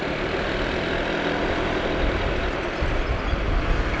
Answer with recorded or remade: recorded